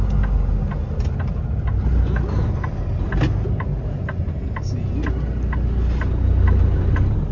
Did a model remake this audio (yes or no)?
no